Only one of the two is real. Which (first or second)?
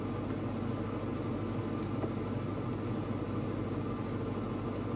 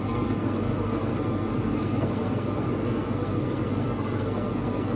first